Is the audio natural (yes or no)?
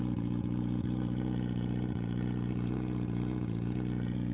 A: no